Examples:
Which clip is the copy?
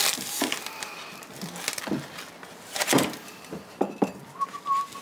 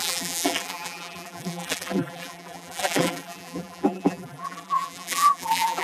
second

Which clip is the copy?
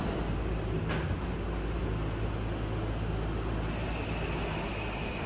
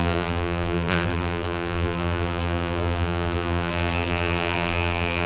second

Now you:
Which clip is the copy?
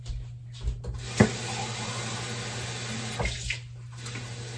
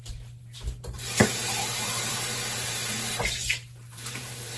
second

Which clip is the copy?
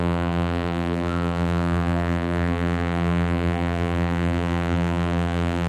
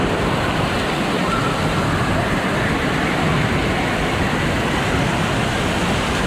first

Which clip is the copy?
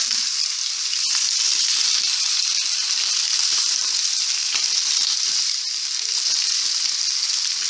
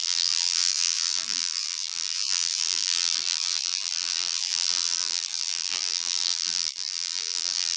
second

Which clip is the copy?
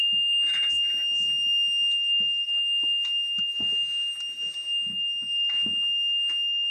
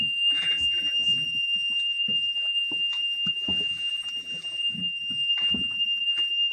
second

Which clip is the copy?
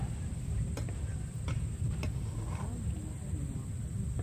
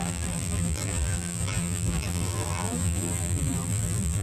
second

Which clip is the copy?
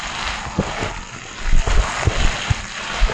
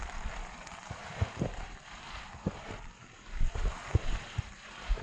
second